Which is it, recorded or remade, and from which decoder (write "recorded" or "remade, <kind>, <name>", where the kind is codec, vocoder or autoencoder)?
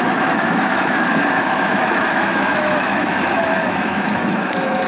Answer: remade, autoencoder, DAC-VAE